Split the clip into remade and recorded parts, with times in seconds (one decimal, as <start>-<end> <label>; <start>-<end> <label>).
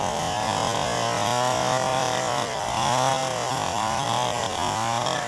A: 0.0-1.9 recorded; 1.9-2.7 remade; 2.7-3.2 recorded; 3.2-4.4 remade; 4.4-5.3 recorded